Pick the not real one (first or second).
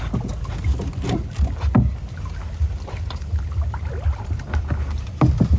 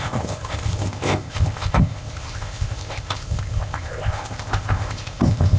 second